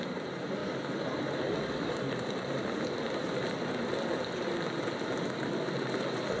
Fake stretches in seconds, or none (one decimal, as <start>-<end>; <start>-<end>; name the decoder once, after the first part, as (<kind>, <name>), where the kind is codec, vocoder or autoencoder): none